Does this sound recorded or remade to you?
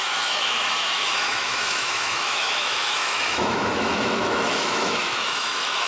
remade